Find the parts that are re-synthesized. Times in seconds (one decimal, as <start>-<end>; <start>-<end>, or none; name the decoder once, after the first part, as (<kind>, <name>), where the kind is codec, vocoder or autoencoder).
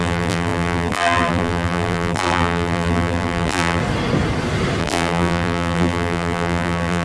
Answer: 0.0-3.8 (vocoder, BigVGAN v2); 4.8-7.0